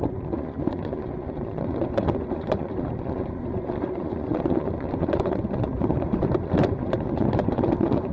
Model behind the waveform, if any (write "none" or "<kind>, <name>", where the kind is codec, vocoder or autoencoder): vocoder, Vocos